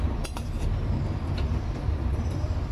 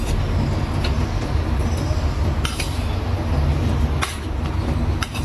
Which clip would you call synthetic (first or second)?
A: first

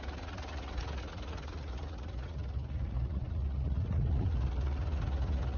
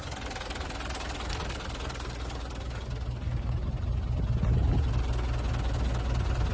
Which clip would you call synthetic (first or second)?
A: first